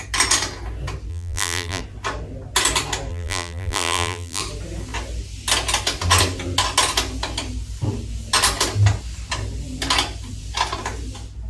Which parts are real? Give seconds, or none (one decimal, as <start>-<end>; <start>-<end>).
0.0-1.1; 1.8-3.1; 4.4-11.5